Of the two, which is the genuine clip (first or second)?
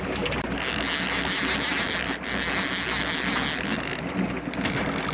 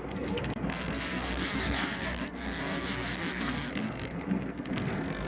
first